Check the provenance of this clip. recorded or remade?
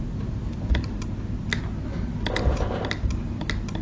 recorded